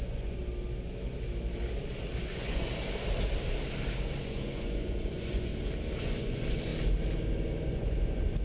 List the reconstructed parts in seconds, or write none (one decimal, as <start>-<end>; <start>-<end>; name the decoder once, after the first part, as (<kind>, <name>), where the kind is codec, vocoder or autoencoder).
0.0-0.4 (vocoder, Vocos); 2.2-2.7; 4.2-5.5; 6.0-6.7; 7.7-8.4